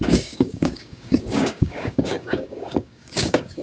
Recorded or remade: remade